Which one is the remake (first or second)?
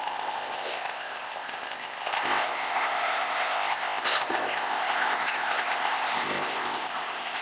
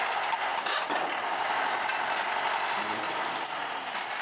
first